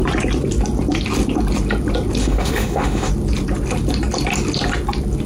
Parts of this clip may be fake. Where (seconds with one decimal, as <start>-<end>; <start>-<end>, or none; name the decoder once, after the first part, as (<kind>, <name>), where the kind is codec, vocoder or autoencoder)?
2.2-3.1 (autoencoder, DAC-VAE)